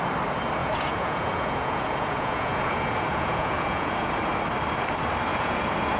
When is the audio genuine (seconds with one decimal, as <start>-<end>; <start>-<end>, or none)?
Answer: 0.0-0.6; 4.2-5.3

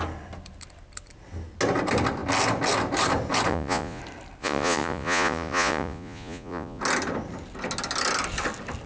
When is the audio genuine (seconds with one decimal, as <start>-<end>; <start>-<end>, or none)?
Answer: 0.0-3.5; 4.0-4.4; 6.8-8.9

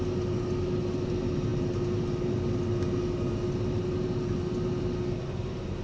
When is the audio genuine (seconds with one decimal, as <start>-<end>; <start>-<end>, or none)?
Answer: 0.0-5.8

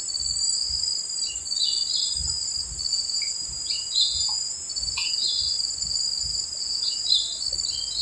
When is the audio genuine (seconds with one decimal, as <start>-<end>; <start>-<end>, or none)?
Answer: 0.0-2.9; 5.1-6.6; 7.1-8.0